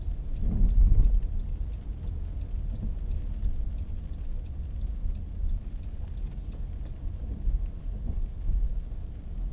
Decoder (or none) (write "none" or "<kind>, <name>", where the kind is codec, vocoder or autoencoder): none